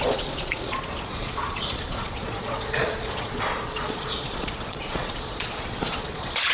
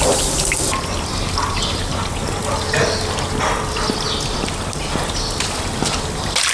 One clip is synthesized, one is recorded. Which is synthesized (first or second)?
first